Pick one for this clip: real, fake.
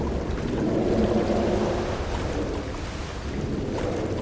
real